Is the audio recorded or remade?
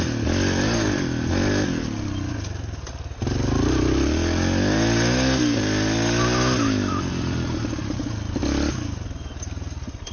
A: recorded